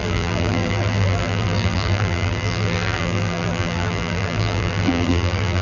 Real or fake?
fake